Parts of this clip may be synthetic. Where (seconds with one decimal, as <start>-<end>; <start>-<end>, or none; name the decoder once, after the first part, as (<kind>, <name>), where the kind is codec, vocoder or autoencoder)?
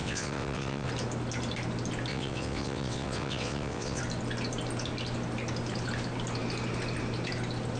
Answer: 0.0-0.9 (vocoder, WaveNeXt); 2.1-4.0